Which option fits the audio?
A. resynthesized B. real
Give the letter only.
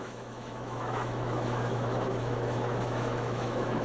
A